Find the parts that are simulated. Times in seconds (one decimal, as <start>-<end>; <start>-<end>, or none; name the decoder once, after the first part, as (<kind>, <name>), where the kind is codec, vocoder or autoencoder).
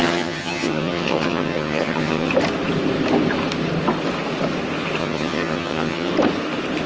0.0-2.3 (vocoder, HiFi-GAN); 5.0-6.1